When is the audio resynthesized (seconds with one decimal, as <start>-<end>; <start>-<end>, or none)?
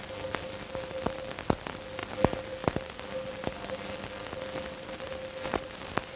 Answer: none